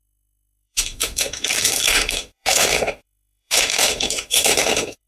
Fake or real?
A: fake